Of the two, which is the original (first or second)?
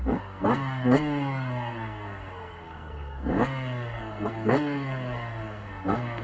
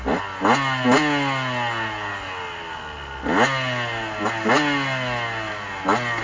second